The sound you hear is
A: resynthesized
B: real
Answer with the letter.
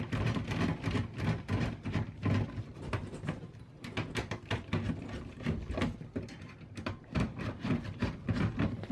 B